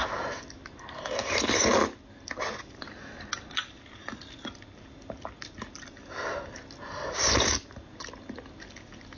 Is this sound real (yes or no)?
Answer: yes